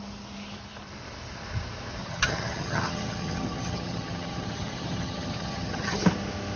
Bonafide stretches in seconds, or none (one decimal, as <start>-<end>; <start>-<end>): 0.0-2.0; 6.0-6.6